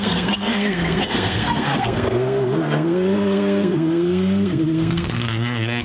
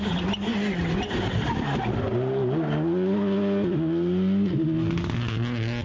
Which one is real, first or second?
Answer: second